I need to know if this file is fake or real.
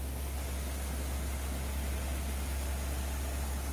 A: real